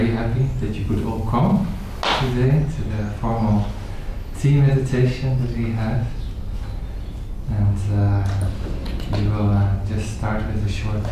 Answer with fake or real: real